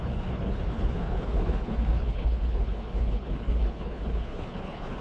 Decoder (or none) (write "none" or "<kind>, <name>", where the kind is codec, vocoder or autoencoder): codec, HILCodec